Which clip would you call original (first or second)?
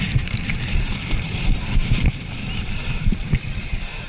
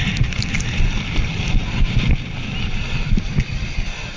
second